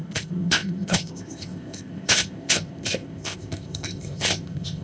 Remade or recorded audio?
remade